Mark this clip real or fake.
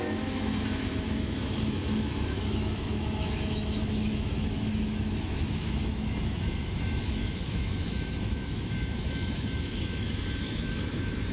fake